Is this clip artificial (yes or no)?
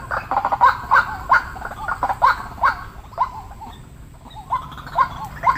yes